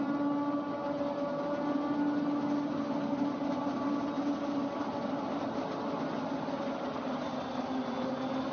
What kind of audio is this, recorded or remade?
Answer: recorded